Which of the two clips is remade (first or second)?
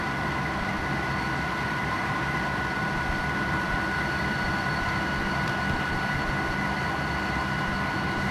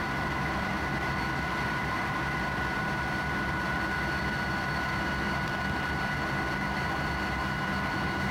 first